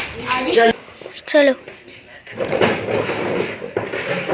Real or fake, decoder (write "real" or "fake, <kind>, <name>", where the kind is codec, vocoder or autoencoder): real